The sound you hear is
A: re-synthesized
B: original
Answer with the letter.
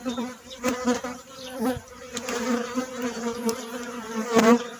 A